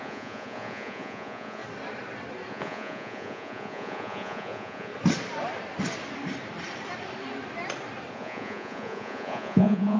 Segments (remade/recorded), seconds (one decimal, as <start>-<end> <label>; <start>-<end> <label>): 0.0-1.6 remade; 1.6-2.5 recorded; 2.5-4.9 remade; 4.9-8.1 recorded; 8.1-10.0 remade